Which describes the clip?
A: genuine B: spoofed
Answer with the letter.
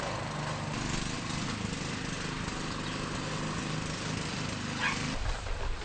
A